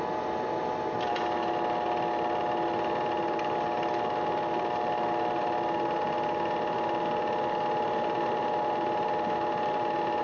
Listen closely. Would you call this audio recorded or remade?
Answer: recorded